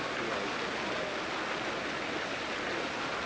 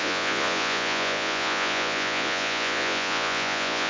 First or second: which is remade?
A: second